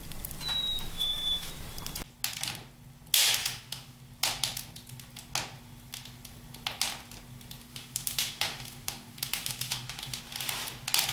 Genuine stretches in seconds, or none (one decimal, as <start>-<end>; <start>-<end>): 0.0-0.9; 1.5-3.4; 4.0-7.7; 10.2-11.1

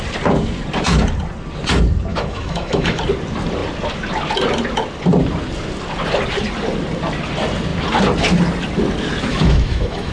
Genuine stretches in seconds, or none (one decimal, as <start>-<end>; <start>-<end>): 0.0-2.1; 3.0-9.3

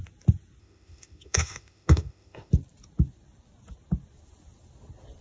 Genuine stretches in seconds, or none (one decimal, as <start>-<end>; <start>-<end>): 0.0-0.6; 2.5-5.2

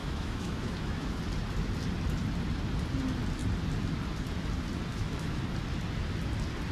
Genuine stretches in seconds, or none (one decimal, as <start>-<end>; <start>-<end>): 1.2-4.9; 5.4-6.7

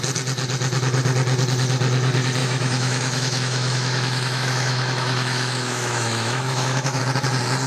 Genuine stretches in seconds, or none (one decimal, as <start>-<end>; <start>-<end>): 0.0-2.4; 7.0-7.7